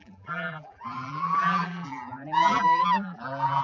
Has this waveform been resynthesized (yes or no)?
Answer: yes